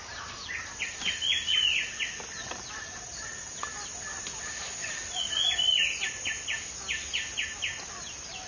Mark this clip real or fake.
real